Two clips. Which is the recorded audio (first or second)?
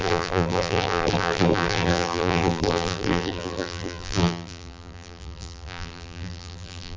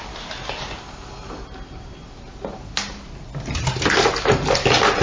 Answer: second